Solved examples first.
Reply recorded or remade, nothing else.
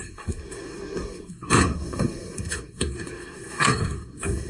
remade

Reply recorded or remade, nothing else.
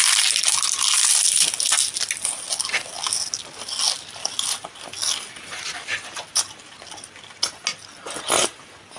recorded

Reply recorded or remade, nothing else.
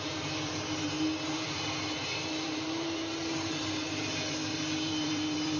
remade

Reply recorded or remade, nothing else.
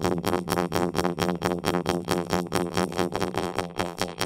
remade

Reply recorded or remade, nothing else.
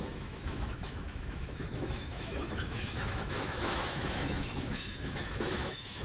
remade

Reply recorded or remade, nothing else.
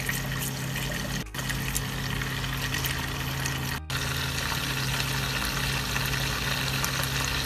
recorded